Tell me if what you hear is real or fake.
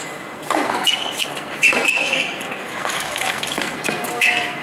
fake